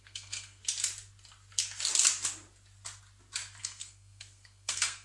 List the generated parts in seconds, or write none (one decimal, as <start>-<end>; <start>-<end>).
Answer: 0.0-0.6; 3.6-5.0